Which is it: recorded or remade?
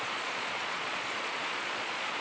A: remade